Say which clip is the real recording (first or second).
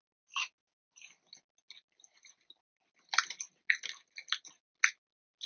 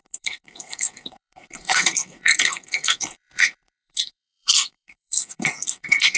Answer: first